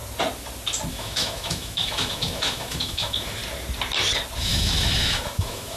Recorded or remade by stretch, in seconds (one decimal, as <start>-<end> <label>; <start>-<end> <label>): 0.0-0.9 recorded; 0.9-3.4 remade; 3.4-4.4 recorded; 4.4-5.8 remade